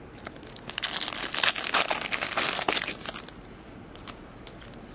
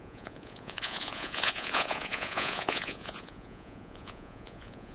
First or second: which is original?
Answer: first